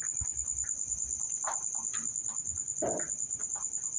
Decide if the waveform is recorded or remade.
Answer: recorded